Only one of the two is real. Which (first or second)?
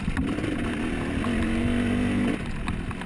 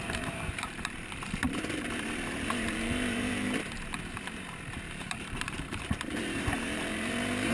first